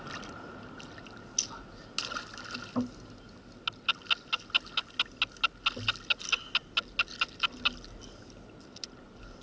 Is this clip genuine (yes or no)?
yes